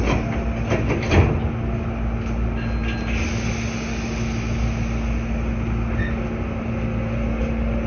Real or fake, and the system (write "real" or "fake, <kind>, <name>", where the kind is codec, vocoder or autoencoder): real